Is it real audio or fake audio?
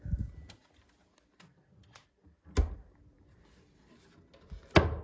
real